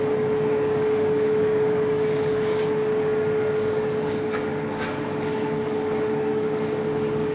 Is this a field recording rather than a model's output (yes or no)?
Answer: no